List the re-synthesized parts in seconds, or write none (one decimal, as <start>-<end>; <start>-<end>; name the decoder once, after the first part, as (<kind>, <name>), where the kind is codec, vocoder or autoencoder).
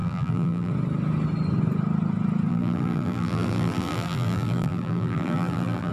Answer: 0.0-0.7 (vocoder, BigVGAN v2); 2.5-5.9